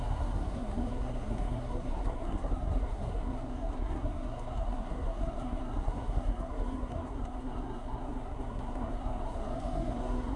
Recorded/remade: remade